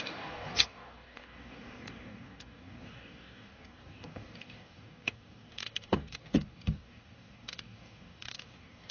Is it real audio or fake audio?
fake